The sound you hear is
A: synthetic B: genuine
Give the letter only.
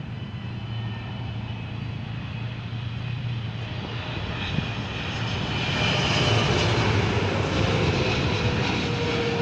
B